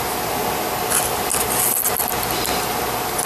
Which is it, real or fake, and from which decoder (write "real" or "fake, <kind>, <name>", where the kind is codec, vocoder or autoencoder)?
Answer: real